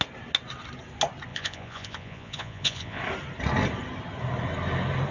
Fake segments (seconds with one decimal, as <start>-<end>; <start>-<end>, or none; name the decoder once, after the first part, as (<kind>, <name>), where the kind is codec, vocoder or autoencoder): 1.3-3.0 (vocoder, Vocos)